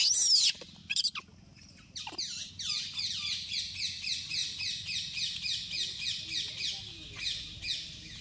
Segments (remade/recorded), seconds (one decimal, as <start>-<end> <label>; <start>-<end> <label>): 0.0-0.8 recorded; 0.8-2.5 remade; 2.5-8.2 recorded

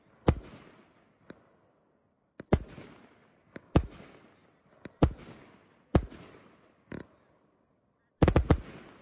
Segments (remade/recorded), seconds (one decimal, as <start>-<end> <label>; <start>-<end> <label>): 0.0-3.4 recorded; 3.4-4.2 remade; 4.2-9.0 recorded

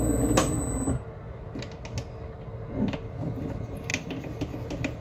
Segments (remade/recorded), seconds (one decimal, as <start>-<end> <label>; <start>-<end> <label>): 0.0-5.0 recorded

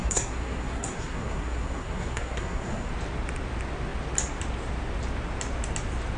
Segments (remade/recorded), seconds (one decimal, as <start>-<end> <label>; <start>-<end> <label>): 0.0-2.9 remade; 2.9-6.2 recorded